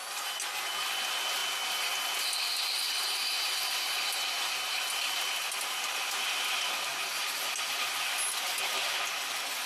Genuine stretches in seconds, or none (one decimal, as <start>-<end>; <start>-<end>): 0.0-9.7